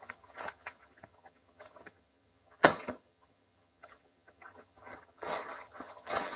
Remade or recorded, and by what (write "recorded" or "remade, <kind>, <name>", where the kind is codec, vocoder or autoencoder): remade, vocoder, HiFi-GAN